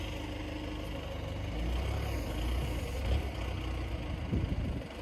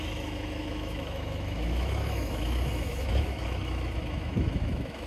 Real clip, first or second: first